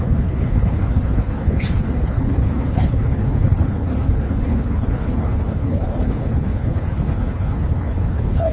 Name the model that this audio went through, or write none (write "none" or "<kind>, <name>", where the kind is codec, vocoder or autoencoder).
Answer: codec, HILCodec